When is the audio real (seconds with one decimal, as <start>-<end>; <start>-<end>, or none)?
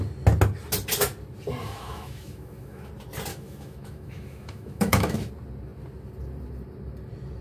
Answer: 0.0-1.6; 2.9-3.3; 5.3-7.4